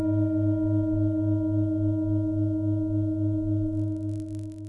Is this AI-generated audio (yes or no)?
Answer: no